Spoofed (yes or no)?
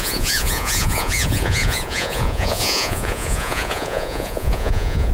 yes